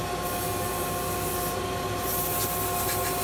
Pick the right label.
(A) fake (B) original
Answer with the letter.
B